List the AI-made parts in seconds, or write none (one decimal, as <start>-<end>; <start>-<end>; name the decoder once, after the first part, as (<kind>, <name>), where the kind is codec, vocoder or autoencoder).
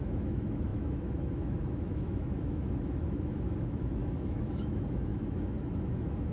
0.0-6.3 (autoencoder, DAC-VAE)